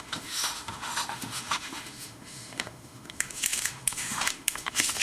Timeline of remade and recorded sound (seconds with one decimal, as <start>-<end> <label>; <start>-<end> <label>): 0.0-5.0 remade